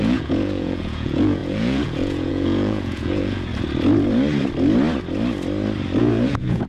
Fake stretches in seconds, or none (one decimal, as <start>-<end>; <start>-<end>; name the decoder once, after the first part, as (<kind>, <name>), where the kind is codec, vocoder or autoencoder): 0.0-3.5 (vocoder, Vocos); 6.0-6.7